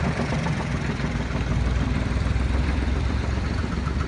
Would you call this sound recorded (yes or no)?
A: no